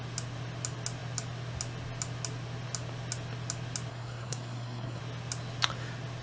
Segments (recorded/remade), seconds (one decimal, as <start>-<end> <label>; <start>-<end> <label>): 0.0-3.9 recorded; 3.9-5.0 remade; 5.0-6.2 recorded